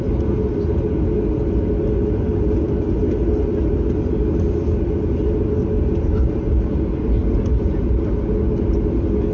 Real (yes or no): yes